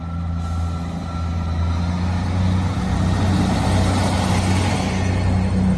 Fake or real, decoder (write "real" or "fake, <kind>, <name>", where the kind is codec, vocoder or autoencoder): real